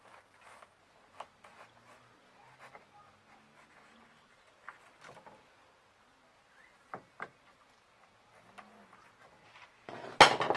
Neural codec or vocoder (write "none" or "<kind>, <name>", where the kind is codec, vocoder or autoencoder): none